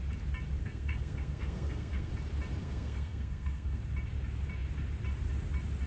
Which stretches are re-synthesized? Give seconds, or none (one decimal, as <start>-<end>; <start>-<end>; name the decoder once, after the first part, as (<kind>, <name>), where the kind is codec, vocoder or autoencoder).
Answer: 0.6-2.1 (codec, SNAC); 2.6-3.8